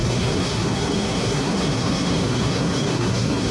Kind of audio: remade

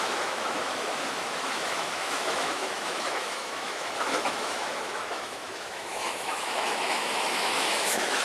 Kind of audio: remade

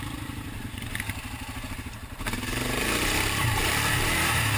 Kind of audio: remade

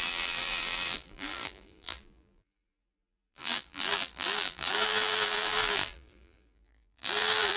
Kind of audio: remade